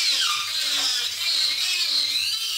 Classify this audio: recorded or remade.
recorded